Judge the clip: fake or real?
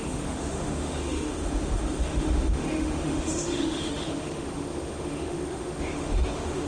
fake